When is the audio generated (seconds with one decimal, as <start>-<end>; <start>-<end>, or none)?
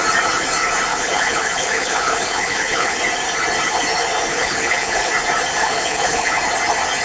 0.9-3.0; 4.3-5.1; 5.6-6.3